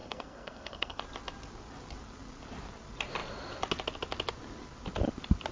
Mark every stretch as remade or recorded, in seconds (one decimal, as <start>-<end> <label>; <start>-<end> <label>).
0.0-1.0 remade; 1.0-5.5 recorded